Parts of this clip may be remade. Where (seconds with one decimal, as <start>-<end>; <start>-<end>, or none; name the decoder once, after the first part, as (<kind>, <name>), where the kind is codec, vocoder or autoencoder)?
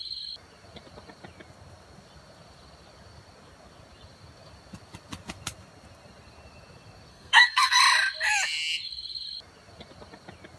7.1-7.8 (codec, SNAC)